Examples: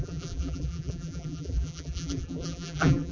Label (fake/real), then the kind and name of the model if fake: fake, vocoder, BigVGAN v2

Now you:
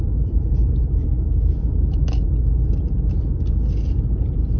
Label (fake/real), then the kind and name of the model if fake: fake, vocoder, BigVGAN v2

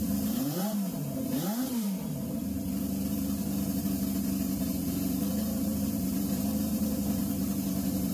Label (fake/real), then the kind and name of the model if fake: fake, vocoder, BigVGAN v2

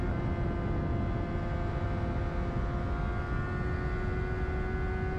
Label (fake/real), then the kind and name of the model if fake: real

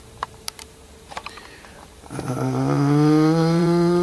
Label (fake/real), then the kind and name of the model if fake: fake, vocoder, BigVGAN v2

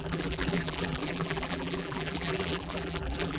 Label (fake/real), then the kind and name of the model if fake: fake, vocoder, BigVGAN v2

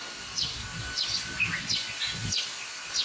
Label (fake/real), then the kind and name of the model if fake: real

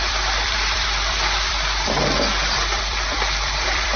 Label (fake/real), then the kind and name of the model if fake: fake, vocoder, BigVGAN v2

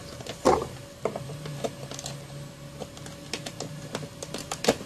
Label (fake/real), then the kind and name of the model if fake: real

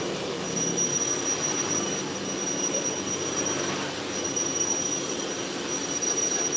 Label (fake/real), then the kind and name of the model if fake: real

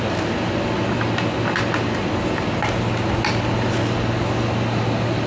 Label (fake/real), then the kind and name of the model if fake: real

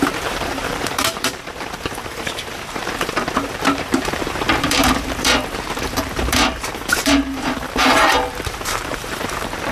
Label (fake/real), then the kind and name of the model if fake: fake, vocoder, BigVGAN v2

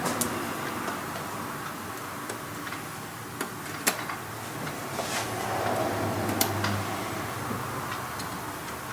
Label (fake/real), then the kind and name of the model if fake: real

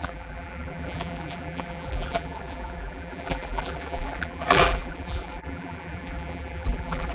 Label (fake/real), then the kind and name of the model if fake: fake, vocoder, BigVGAN v2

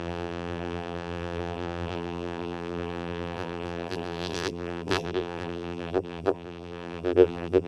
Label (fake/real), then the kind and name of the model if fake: fake, vocoder, BigVGAN v2